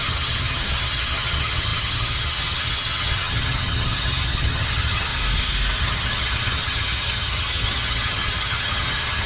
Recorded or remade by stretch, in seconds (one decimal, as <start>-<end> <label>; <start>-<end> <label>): 0.0-5.1 remade; 5.1-5.8 recorded; 5.8-9.3 remade